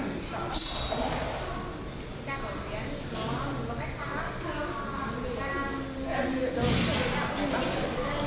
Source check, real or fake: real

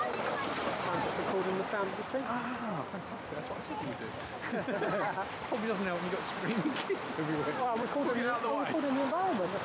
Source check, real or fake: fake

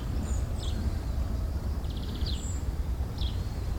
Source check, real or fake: fake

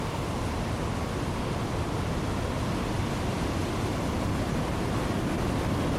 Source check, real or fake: real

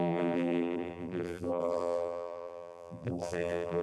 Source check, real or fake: fake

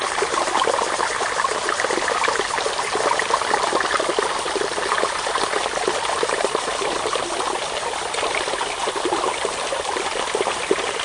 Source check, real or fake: real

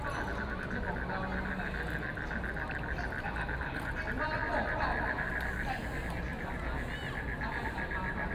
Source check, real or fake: real